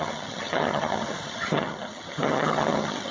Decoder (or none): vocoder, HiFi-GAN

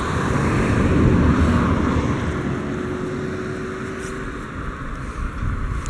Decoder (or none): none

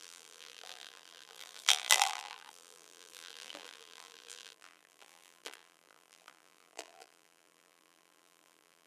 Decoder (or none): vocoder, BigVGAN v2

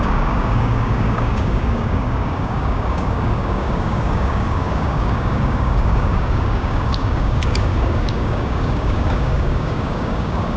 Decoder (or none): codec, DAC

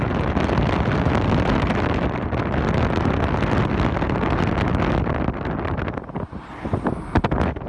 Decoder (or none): none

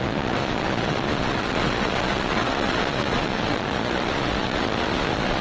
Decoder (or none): vocoder, Vocos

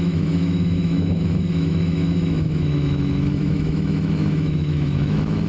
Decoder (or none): autoencoder, DAC-VAE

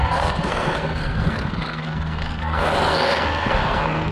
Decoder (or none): codec, SNAC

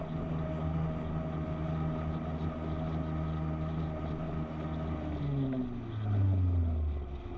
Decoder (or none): none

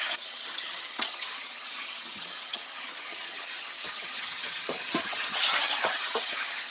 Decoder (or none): vocoder, HiFi-GAN